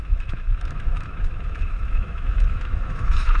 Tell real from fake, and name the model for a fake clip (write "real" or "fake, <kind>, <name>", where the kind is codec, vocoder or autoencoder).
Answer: fake, autoencoder, DAC-VAE